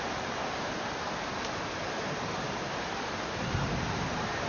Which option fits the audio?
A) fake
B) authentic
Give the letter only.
A